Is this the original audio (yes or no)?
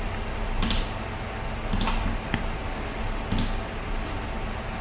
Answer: yes